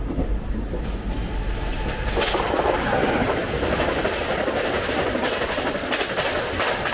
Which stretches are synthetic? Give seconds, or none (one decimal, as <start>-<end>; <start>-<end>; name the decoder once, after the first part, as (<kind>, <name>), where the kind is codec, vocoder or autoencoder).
none